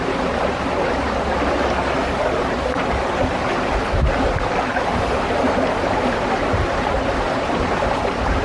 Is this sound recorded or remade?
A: recorded